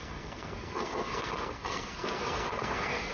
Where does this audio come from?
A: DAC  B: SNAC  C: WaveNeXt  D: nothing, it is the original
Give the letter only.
B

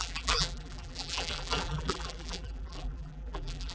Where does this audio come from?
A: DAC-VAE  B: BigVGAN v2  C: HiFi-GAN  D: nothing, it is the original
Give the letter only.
B